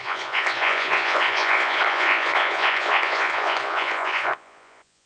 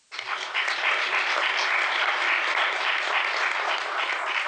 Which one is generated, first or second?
first